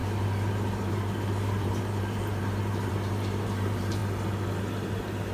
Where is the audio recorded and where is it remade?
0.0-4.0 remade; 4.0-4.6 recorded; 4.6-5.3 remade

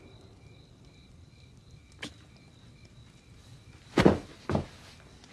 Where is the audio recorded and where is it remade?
0.0-5.3 recorded